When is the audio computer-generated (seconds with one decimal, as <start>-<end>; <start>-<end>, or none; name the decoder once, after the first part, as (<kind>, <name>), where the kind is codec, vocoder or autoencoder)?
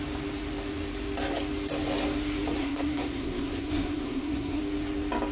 2.6-4.6 (codec, SNAC)